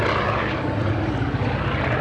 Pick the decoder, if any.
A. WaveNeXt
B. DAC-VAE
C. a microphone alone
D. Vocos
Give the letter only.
C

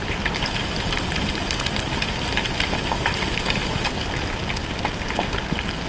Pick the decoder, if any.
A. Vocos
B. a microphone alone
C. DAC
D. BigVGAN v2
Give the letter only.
B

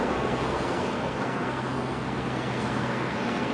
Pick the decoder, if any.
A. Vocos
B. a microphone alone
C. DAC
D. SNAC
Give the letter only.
D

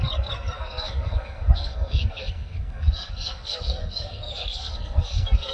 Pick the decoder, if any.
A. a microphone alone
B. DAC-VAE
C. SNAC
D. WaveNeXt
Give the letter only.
C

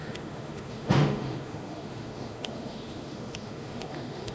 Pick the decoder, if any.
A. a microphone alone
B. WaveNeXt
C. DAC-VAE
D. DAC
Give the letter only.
C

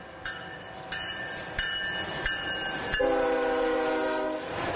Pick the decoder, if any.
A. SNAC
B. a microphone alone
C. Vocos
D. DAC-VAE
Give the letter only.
B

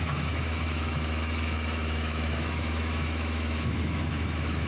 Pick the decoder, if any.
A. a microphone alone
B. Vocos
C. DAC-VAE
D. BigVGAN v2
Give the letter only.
C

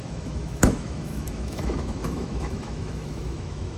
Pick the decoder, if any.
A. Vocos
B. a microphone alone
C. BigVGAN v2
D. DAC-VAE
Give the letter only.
D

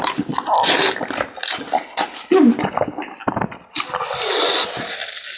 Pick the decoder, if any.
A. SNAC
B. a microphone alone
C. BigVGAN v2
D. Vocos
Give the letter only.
B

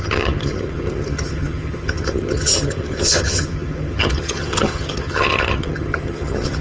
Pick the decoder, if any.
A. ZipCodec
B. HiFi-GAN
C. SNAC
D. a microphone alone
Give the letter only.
B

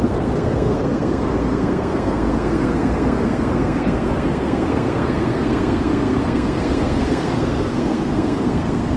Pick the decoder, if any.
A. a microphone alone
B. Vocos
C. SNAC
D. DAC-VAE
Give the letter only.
C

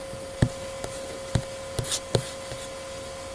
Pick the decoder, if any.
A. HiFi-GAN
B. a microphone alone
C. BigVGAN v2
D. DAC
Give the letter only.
B